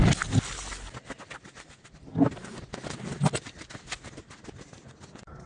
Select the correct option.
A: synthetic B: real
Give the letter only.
B